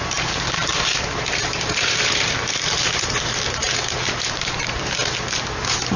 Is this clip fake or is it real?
fake